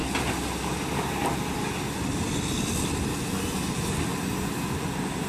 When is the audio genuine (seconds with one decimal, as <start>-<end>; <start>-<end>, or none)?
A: 0.0-5.3